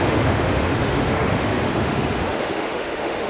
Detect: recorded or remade remade